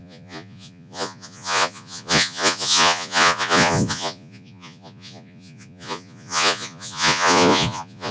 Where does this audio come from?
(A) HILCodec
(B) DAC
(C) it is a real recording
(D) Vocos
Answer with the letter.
D